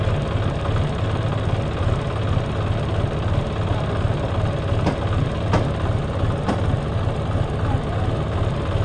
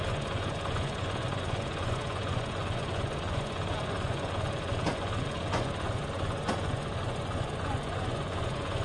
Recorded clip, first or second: first